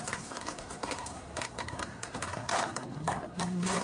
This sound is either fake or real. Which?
fake